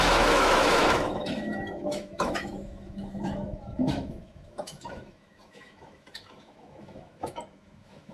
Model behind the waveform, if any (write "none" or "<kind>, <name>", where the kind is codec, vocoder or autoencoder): autoencoder, DAC-VAE